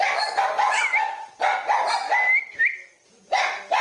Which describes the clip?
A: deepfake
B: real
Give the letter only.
B